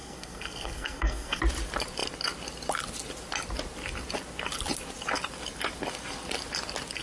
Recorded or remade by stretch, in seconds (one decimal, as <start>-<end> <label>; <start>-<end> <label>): 0.0-1.4 remade; 1.4-7.0 recorded